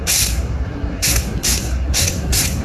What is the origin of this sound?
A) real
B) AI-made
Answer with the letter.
B